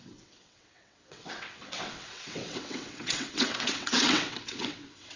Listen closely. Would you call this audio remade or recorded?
remade